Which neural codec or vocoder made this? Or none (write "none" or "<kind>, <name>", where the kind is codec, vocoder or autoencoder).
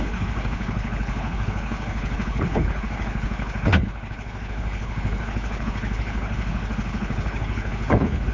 codec, HILCodec